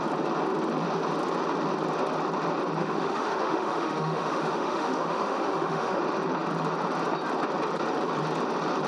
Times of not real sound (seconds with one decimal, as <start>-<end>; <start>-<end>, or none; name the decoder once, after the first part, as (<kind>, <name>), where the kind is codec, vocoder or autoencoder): 2.8-6.0 (autoencoder, DAC-VAE)